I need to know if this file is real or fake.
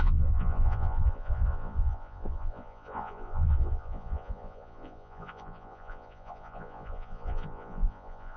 fake